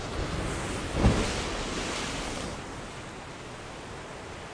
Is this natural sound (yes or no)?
yes